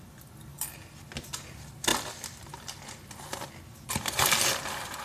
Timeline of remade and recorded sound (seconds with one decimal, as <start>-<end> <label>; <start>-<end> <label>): 0.0-5.0 recorded

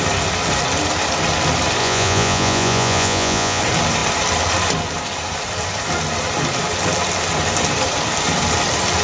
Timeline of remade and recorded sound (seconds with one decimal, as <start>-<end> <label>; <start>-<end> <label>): 0.0-1.8 recorded; 1.8-3.6 remade; 3.6-9.0 recorded

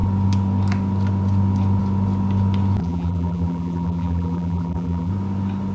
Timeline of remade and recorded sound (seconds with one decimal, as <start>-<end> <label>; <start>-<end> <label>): 0.0-2.8 recorded; 2.8-5.1 remade; 5.1-5.7 recorded

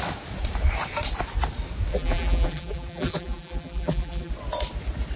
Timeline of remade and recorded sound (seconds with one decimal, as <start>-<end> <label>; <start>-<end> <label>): 0.0-1.9 recorded; 1.9-4.3 remade; 4.3-5.2 recorded

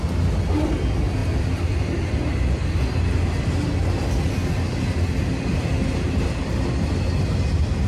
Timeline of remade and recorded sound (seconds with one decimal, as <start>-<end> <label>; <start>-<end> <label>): 0.0-1.2 recorded; 1.2-1.8 remade; 1.8-7.9 recorded

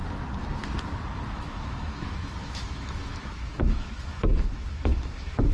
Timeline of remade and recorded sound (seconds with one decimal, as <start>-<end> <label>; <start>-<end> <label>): 0.0-1.3 recorded; 1.3-5.5 remade